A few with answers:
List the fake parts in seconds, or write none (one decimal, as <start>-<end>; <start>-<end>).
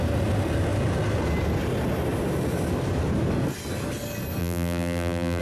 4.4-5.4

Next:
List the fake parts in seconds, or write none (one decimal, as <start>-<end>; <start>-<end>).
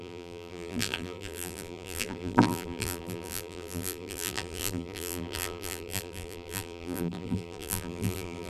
0.0-8.5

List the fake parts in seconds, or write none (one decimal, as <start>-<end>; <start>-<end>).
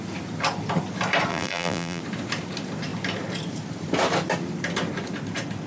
1.3-2.0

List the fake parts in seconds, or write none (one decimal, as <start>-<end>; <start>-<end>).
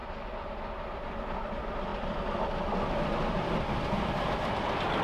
0.7-5.0